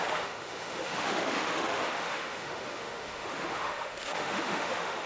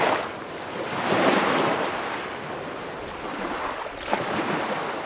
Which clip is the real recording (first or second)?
second